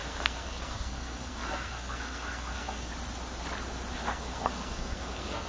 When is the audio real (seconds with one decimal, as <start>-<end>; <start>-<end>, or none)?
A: 2.9-3.9